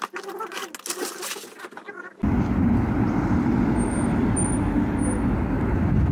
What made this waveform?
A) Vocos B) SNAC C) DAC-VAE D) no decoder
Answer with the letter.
D